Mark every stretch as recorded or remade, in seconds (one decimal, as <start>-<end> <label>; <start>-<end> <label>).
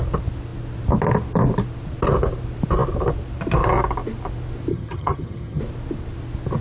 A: 0.0-4.7 recorded; 4.7-5.6 remade; 5.6-6.6 recorded